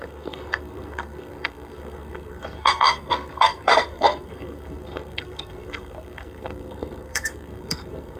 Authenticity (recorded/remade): remade